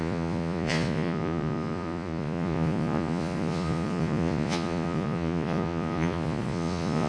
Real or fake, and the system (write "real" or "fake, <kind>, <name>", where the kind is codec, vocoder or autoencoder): fake, vocoder, Vocos